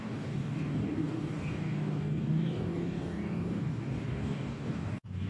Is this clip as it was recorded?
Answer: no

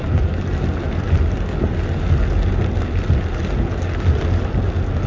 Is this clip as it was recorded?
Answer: yes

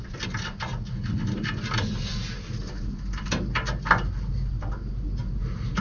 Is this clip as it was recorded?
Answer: yes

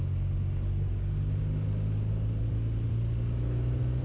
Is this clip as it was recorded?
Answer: yes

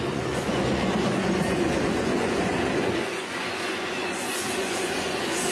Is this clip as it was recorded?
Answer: no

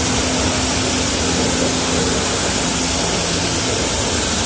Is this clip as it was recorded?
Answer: yes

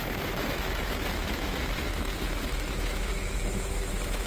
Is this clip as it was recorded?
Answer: no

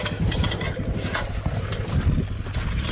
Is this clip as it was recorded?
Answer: yes